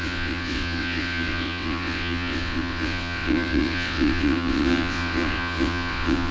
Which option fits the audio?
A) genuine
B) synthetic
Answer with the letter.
B